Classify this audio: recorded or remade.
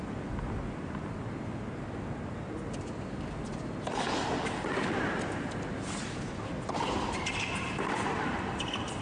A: recorded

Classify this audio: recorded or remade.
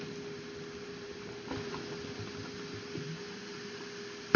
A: recorded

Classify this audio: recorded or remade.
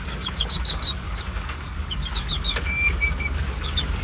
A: remade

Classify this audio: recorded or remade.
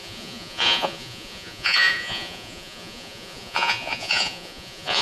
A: remade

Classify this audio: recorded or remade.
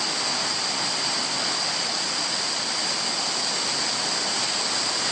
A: recorded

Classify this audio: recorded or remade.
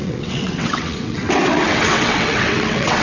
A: remade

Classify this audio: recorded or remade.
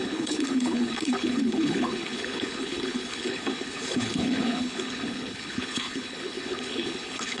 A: remade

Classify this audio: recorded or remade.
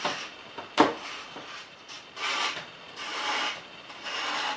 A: remade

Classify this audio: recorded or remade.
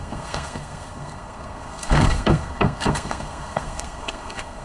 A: remade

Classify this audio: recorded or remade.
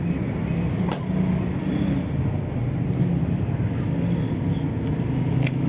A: recorded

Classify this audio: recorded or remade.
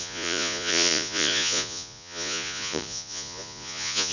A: remade